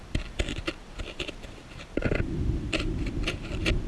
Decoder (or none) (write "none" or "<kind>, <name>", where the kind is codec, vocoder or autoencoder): vocoder, BigVGAN v2